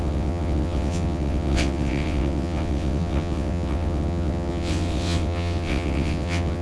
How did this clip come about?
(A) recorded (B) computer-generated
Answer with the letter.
B